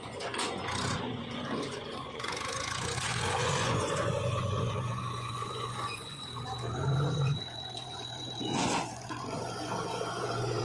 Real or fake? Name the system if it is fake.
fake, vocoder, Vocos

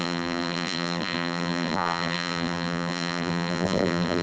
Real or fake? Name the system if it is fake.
fake, vocoder, BigVGAN v2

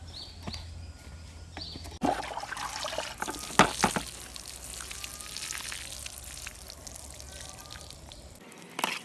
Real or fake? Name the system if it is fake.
real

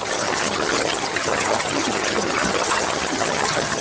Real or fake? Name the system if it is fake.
fake, vocoder, HiFi-GAN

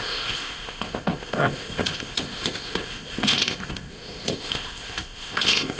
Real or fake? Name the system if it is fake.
fake, codec, ZipCodec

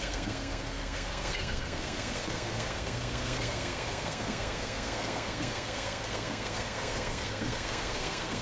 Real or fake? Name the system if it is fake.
fake, codec, SNAC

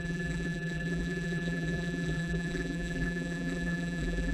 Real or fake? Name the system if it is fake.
fake, vocoder, BigVGAN v2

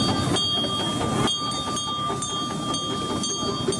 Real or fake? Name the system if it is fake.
real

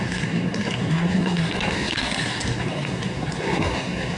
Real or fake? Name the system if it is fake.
fake, codec, SNAC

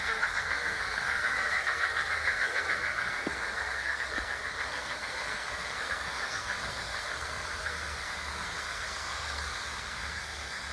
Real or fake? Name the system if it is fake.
fake, codec, SNAC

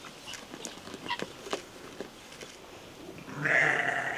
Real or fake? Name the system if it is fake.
real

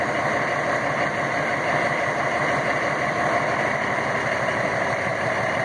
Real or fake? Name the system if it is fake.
real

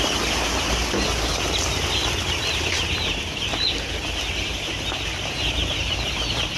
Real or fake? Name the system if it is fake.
real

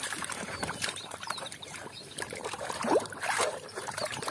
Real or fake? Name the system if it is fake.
fake, vocoder, BigVGAN v2